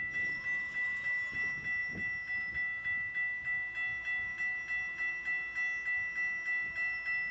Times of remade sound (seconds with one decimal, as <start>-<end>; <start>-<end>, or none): none